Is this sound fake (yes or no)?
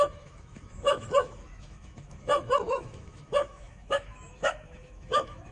yes